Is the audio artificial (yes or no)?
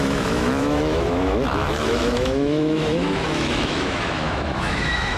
yes